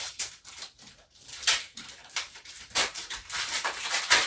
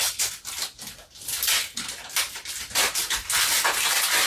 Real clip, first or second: second